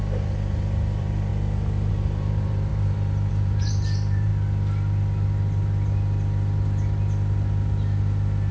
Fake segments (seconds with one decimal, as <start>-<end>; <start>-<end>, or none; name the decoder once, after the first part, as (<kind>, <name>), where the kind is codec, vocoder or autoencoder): 0.0-1.3 (vocoder, BigVGAN v2); 1.9-4.3